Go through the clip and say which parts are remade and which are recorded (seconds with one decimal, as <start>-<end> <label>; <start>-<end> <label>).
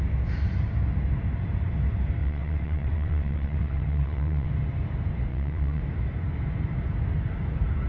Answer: 0.0-2.2 recorded; 2.2-4.5 remade; 4.5-5.3 recorded; 5.3-5.8 remade; 5.8-7.9 recorded